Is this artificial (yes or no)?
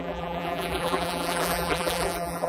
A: yes